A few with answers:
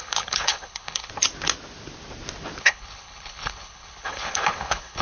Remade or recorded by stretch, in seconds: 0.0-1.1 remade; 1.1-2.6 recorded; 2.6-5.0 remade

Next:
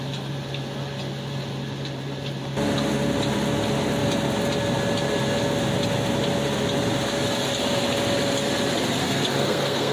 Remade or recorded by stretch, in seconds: 0.0-9.0 recorded; 9.0-9.9 remade

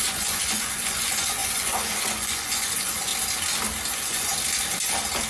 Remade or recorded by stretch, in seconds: 0.0-3.1 remade; 3.1-3.9 recorded; 3.9-4.3 remade; 4.3-5.3 recorded

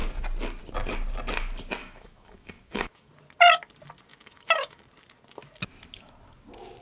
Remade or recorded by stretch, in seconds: 0.0-1.8 recorded; 1.8-3.1 remade; 3.1-4.1 recorded; 4.1-4.8 remade; 4.8-6.8 recorded

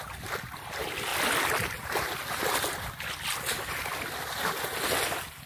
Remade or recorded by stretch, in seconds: 0.0-1.1 recorded; 1.1-4.4 remade; 4.4-5.5 recorded